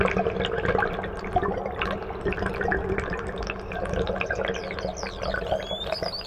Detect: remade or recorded recorded